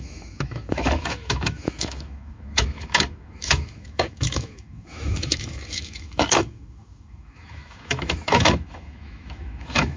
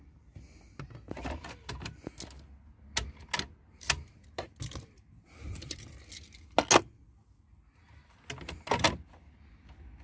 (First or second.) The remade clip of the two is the first